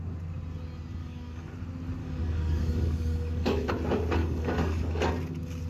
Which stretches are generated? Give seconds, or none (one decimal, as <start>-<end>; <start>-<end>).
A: 1.0-1.5; 2.0-3.7; 4.2-5.1